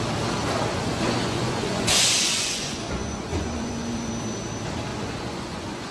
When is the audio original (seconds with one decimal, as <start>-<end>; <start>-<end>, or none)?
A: 0.0-0.7; 4.1-4.9